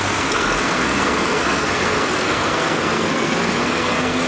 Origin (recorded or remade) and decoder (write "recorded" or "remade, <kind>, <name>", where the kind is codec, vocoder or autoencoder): remade, codec, SNAC